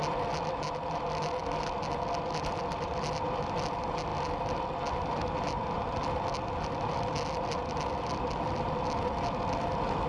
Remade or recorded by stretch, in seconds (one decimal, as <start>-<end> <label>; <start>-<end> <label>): 0.0-10.1 recorded